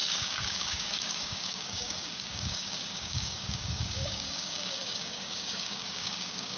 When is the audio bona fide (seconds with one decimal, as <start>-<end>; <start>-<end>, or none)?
none